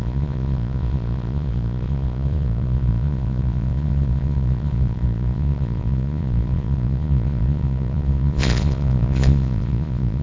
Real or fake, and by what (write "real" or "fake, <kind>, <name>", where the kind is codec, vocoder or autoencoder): fake, vocoder, Vocos